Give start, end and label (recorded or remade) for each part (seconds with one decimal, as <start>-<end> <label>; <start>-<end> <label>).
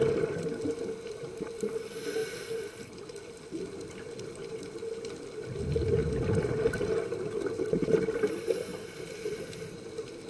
0.0-2.2 recorded; 2.2-3.6 remade; 3.6-6.0 recorded; 6.0-6.9 remade; 6.9-8.7 recorded; 8.7-9.4 remade; 9.4-10.3 recorded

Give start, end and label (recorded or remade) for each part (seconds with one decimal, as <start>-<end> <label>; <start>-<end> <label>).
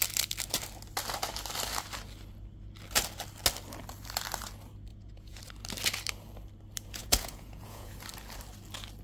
0.0-4.9 recorded; 4.9-5.4 remade; 5.4-7.0 recorded; 7.0-7.9 remade; 7.9-9.0 recorded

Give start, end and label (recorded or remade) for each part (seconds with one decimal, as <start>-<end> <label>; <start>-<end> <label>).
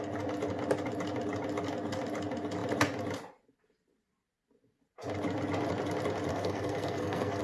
0.0-6.3 recorded; 6.3-7.4 remade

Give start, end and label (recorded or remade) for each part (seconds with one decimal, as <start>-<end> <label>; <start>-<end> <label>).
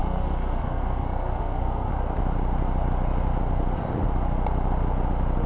0.0-1.9 remade; 1.9-5.5 recorded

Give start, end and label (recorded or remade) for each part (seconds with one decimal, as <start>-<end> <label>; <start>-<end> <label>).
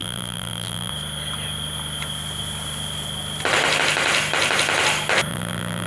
0.0-0.9 remade; 0.9-5.3 recorded; 5.3-5.9 remade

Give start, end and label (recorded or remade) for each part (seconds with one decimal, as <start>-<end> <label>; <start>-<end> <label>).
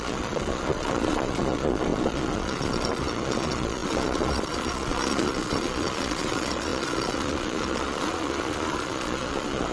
0.0-9.7 remade